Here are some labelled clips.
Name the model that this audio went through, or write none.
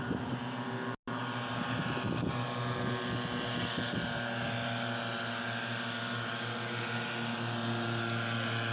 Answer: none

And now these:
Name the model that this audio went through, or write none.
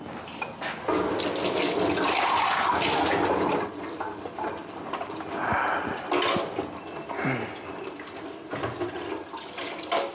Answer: none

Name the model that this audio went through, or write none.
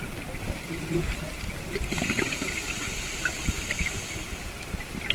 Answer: none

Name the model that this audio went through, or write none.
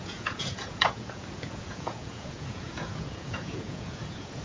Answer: vocoder, Vocos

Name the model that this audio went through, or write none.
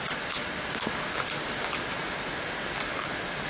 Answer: none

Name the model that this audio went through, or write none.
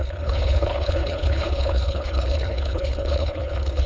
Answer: codec, HILCodec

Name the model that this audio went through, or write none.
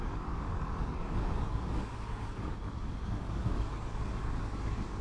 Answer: codec, DAC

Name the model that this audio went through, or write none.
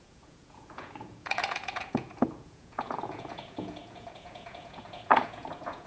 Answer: vocoder, Vocos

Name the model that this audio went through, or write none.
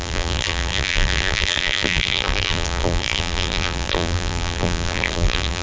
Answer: vocoder, BigVGAN v2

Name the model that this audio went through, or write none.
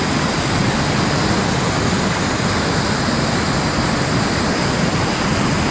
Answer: none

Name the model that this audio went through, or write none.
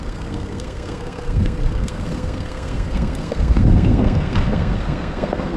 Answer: codec, SNAC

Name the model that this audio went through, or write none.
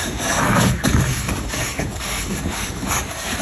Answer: codec, DAC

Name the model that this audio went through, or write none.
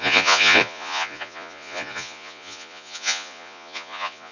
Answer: vocoder, Vocos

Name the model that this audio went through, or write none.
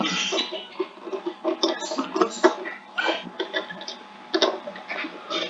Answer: none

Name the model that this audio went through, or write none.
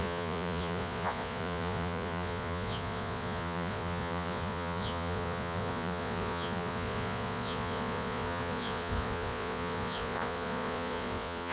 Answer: vocoder, Vocos